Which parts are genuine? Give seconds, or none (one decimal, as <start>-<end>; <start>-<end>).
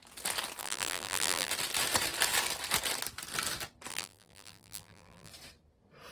0.0-0.6; 1.5-3.9; 5.3-6.1